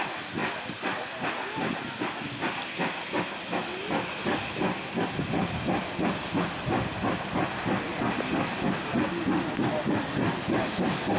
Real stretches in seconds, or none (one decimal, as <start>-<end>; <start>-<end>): 0.0-11.2